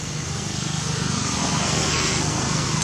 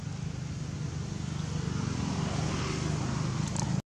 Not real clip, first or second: first